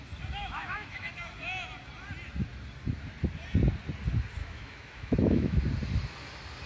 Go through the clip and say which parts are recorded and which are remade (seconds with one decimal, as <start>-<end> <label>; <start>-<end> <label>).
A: 0.0-0.4 recorded; 0.4-1.1 remade; 1.1-4.4 recorded; 4.4-5.6 remade; 5.6-6.7 recorded